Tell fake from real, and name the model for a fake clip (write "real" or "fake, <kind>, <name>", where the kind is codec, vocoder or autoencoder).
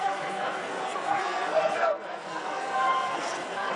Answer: fake, codec, SNAC